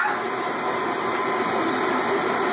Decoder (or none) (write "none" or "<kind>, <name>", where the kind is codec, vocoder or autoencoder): none